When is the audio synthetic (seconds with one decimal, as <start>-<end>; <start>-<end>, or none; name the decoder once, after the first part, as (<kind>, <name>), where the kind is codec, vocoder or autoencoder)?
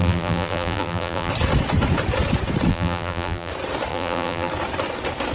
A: 0.0-1.3 (vocoder, BigVGAN v2); 2.7-3.5; 3.9-4.5